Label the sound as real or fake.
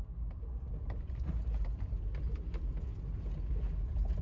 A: real